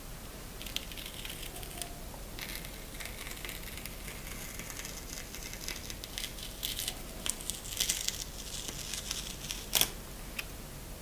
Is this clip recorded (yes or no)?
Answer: yes